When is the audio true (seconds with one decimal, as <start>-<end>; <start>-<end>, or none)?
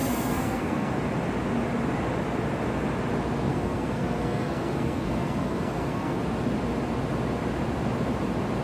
0.9-3.5; 6.2-8.6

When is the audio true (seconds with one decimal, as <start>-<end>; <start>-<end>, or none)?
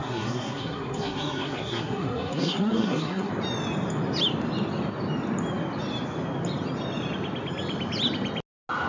3.3-8.9